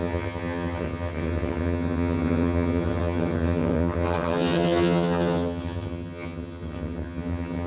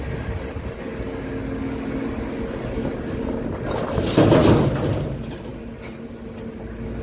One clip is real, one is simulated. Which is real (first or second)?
second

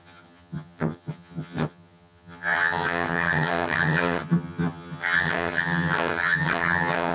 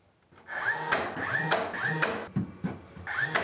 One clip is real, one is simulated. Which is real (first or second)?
second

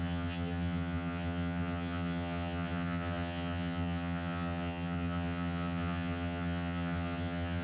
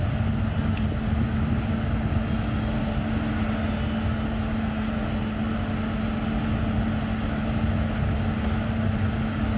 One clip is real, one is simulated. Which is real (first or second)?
second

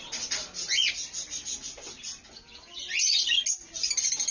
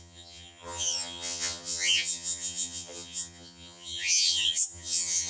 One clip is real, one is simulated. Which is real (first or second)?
first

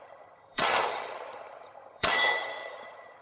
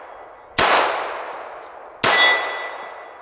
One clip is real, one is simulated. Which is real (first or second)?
second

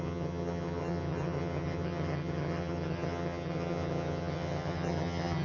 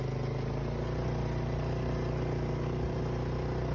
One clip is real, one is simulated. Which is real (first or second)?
second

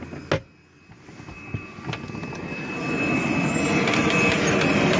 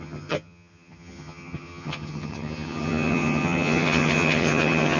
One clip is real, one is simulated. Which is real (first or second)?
first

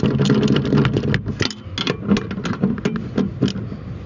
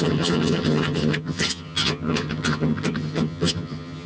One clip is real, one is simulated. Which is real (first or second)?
first